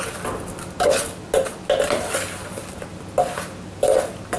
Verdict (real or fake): real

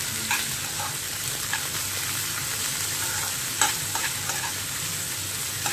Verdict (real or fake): real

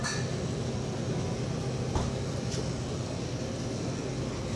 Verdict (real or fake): real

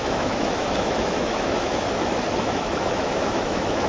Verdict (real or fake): fake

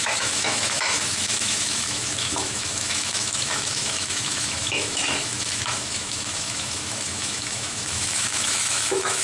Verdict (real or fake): fake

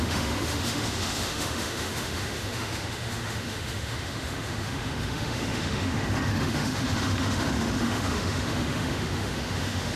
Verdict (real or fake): fake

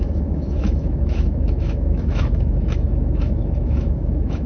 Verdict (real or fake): fake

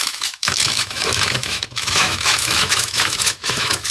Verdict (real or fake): fake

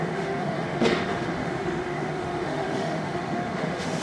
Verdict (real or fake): fake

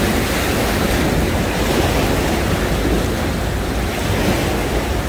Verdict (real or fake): real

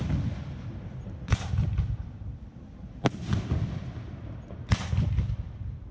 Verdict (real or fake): real